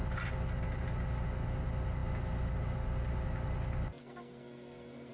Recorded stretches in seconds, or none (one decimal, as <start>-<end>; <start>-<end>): 0.0-4.0

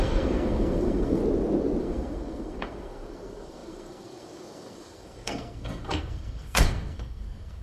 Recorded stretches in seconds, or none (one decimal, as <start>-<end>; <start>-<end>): 1.2-1.8

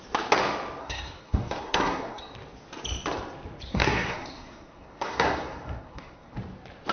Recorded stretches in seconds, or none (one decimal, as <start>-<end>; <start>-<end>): 0.0-0.8; 2.2-3.7; 6.3-6.9

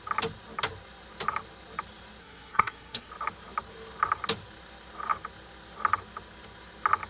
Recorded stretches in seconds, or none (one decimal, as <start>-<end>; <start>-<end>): 0.0-2.2; 3.1-7.1

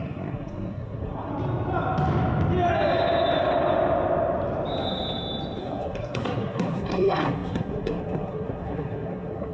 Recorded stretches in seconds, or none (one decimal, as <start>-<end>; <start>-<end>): 1.3-5.6

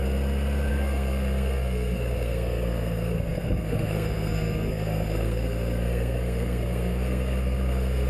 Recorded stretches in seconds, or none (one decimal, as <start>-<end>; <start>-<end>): 0.0-0.7

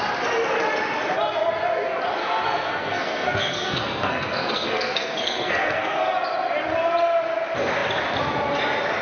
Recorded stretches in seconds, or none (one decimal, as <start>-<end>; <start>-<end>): 0.0-2.2; 6.0-9.0